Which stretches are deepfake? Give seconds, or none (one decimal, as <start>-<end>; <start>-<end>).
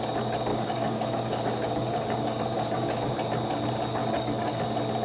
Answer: 0.5-3.1; 4.0-4.6